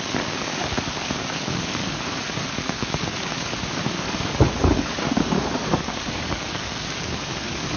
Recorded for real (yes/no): no